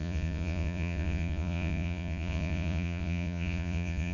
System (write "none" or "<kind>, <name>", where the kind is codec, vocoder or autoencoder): vocoder, Vocos